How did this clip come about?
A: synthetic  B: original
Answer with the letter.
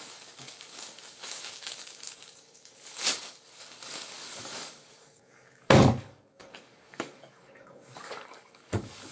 A